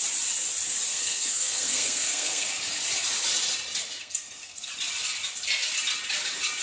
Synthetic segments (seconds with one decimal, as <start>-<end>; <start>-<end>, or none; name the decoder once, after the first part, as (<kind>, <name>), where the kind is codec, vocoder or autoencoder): 0.9-2.5 (codec, SNAC); 4.0-4.7